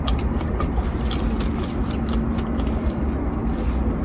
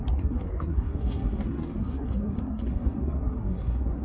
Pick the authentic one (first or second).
first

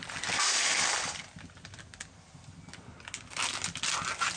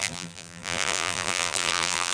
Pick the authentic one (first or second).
first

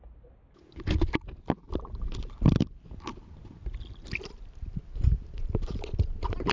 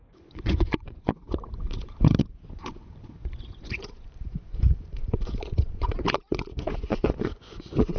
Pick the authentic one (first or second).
first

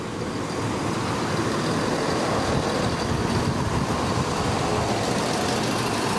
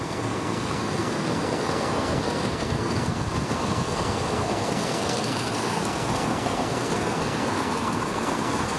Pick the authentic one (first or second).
first